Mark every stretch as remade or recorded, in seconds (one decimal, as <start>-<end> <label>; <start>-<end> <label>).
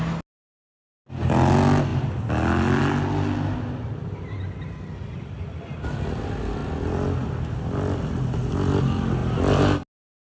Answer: 0.0-10.2 recorded